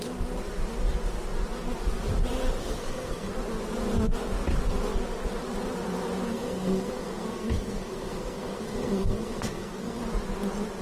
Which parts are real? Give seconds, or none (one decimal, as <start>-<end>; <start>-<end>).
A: 0.0-2.6; 3.3-6.3; 10.0-10.8